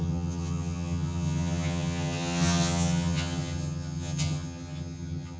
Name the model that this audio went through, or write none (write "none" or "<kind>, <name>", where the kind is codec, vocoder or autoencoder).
vocoder, HiFi-GAN